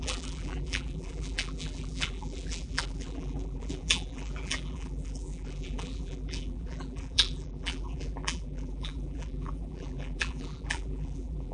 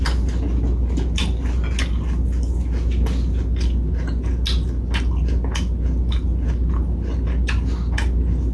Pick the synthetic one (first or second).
first